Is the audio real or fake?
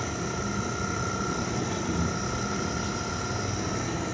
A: real